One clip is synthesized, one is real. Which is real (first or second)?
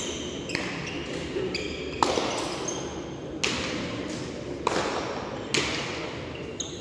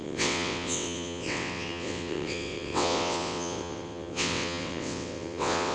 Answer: first